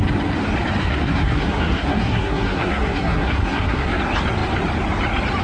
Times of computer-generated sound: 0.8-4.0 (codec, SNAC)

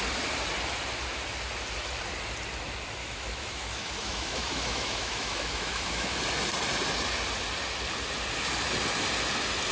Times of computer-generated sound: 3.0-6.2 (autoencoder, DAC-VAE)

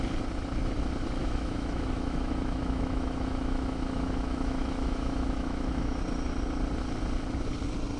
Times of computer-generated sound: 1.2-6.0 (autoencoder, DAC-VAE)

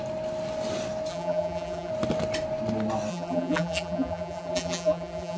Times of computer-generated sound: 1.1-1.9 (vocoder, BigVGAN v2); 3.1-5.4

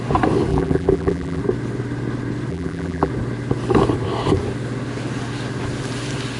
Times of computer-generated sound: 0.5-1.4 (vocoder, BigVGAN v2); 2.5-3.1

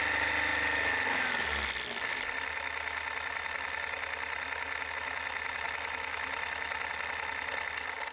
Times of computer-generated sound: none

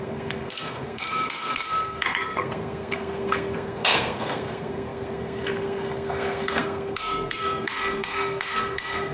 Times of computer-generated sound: 0.0-9.1 (codec, SNAC)

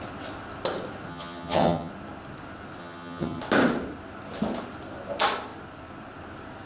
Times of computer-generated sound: 1.1-1.9 (vocoder, HiFi-GAN); 2.8-3.4